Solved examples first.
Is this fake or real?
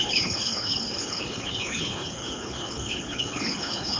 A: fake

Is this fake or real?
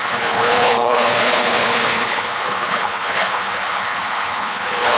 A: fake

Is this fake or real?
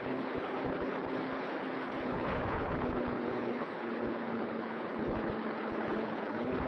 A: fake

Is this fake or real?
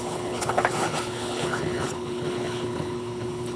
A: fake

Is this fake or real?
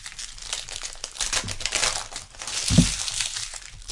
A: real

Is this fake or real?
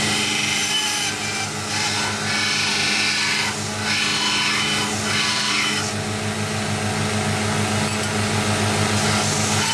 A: real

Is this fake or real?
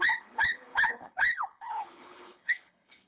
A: fake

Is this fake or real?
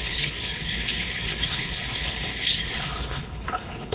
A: fake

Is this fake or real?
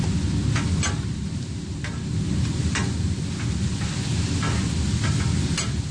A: real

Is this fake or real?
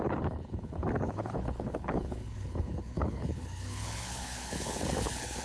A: fake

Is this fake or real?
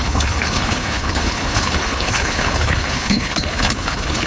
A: fake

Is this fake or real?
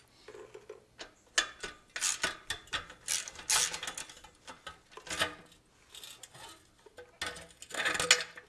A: real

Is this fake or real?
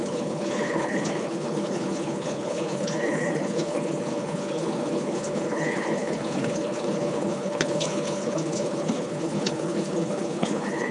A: fake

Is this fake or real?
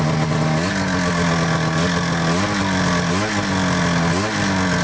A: real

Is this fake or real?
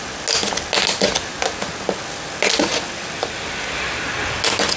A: real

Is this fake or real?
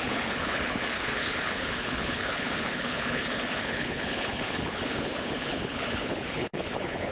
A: fake